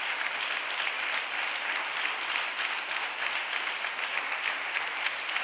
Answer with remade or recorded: recorded